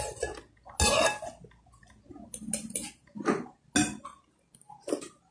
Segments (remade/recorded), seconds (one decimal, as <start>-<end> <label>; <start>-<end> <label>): 0.0-5.3 recorded